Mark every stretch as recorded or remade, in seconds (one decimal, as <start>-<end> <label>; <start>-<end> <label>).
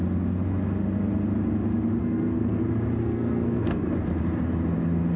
0.0-2.0 recorded; 2.0-2.6 remade; 2.6-3.0 recorded; 3.0-3.8 remade; 3.8-5.2 recorded